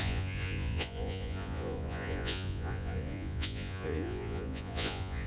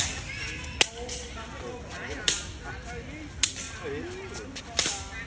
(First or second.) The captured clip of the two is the second